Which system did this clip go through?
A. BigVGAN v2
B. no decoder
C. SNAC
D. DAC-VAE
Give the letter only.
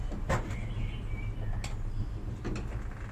B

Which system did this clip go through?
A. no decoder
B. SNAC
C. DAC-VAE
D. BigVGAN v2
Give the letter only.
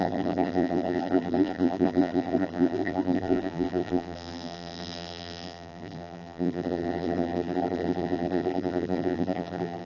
D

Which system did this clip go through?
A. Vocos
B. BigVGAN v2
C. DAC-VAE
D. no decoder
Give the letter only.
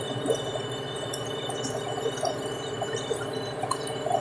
B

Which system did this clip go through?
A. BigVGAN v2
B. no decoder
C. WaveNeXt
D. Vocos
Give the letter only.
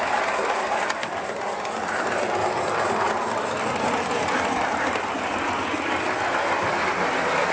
B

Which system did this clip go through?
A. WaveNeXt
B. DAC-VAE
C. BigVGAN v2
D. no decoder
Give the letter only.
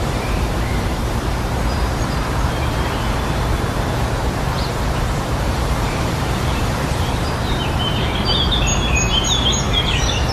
C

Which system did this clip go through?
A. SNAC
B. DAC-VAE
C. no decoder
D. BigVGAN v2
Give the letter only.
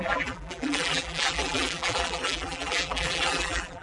D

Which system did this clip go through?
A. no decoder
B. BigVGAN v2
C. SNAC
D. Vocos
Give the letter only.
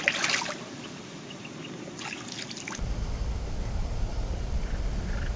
A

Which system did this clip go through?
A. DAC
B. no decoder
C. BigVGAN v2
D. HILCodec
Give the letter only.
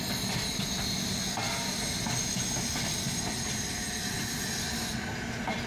B